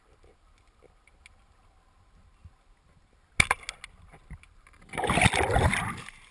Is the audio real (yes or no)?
yes